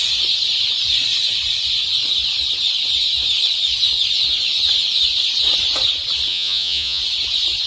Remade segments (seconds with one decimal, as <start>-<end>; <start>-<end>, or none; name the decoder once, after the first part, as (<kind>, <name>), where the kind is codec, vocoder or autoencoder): 6.3-7.0 (vocoder, Vocos)